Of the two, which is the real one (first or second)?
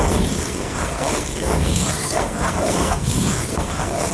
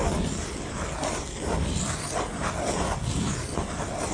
second